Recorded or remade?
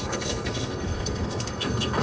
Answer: remade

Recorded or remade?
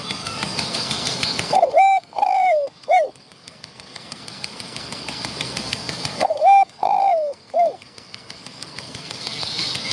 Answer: remade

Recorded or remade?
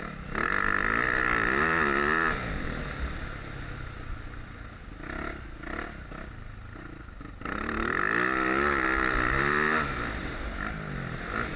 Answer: recorded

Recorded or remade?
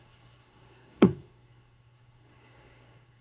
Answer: remade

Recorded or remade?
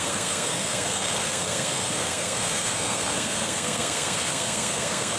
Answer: remade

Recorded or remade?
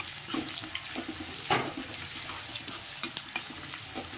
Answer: recorded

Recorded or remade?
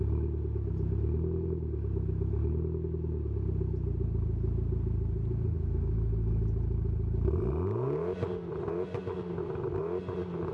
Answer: recorded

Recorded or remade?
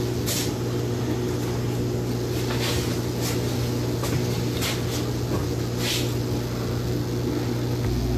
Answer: recorded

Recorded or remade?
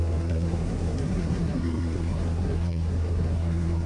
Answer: remade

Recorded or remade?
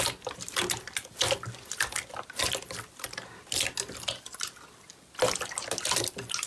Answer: recorded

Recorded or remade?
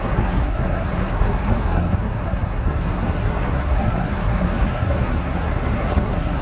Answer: remade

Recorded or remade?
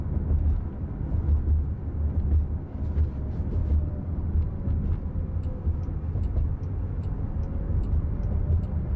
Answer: recorded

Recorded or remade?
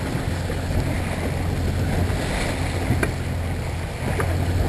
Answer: recorded